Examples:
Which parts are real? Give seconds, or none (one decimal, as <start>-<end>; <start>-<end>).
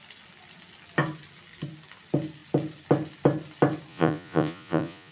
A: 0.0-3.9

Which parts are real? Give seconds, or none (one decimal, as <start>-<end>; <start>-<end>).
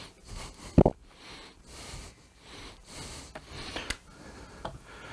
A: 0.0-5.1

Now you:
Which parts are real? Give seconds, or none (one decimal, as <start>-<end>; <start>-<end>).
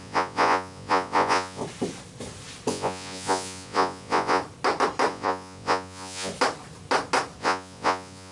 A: 1.6-2.7; 4.4-5.1; 6.3-7.4